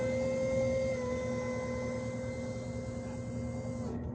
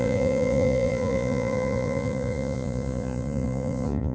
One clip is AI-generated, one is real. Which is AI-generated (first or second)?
second